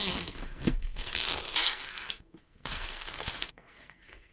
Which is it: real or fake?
fake